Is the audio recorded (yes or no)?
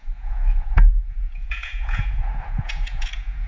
no